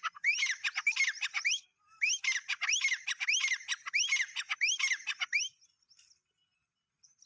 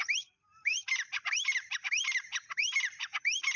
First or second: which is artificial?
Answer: second